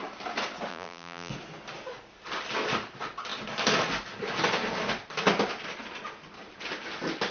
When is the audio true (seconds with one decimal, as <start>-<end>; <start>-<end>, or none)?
0.0-0.7; 1.3-7.3